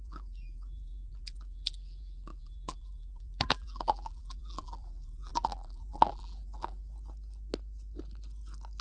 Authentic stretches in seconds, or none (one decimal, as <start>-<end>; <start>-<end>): 6.8-8.8